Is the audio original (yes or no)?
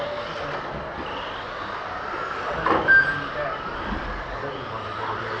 yes